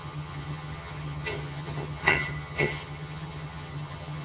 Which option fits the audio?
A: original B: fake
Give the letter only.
B